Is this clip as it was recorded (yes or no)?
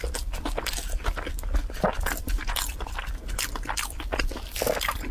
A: yes